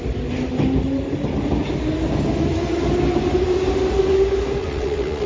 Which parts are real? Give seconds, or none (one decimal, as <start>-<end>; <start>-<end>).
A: 0.0-4.6